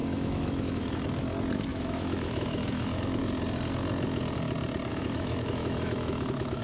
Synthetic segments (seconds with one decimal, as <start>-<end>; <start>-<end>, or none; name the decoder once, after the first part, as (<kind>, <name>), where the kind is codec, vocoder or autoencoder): 0.0-1.0 (autoencoder, DAC-VAE); 1.7-3.2; 4.9-6.6